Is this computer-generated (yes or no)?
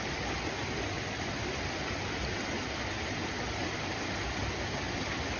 no